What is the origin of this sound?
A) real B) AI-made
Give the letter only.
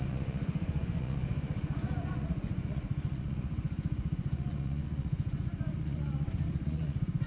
B